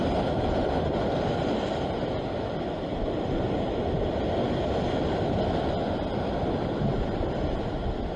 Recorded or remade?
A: recorded